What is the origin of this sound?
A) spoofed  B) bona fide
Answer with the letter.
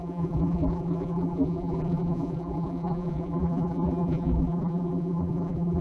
A